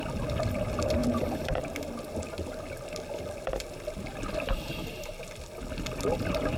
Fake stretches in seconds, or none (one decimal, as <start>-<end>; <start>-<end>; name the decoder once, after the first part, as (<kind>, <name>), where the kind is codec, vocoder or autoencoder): 1.0-1.6 (vocoder, BigVGAN v2)